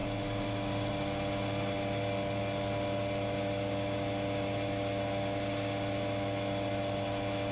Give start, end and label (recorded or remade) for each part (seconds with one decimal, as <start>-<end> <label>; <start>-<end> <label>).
0.0-7.5 recorded